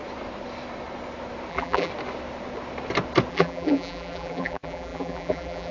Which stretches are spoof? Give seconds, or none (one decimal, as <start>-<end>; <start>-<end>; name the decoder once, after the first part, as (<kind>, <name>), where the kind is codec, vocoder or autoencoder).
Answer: 1.5-1.9 (vocoder, BigVGAN v2); 3.3-5.7